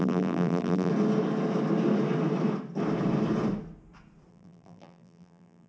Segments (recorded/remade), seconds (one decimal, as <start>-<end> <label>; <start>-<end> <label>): 0.0-0.9 remade; 0.9-4.3 recorded; 4.3-5.7 remade